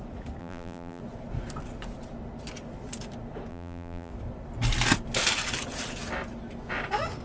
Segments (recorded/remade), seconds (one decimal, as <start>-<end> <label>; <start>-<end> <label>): 0.0-0.4 recorded; 0.4-1.0 remade; 1.0-3.5 recorded; 3.5-4.1 remade; 4.1-7.2 recorded